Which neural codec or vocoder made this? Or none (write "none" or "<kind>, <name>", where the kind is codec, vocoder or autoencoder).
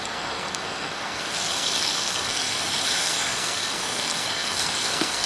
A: codec, SNAC